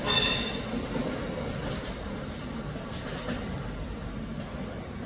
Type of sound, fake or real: real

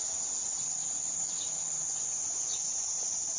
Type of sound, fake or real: real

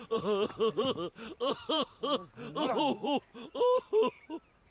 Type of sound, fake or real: fake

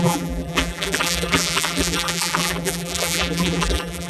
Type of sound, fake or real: fake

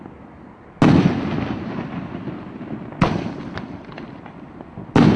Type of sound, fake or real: real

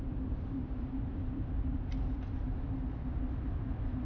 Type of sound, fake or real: fake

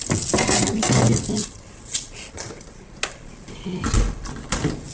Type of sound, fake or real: real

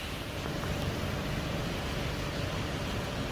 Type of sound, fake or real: real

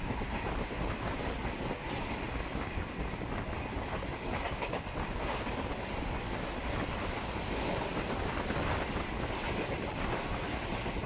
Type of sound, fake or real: real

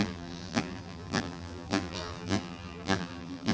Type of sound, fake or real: fake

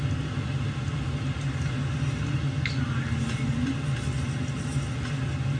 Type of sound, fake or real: real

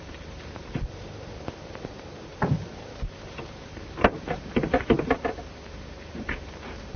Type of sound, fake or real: fake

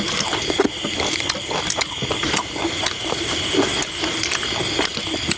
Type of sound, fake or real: real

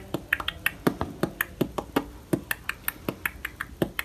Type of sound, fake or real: real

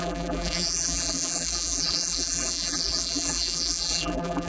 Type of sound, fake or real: fake